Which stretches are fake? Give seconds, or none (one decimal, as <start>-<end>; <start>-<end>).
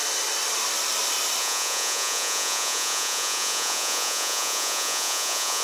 1.4-5.6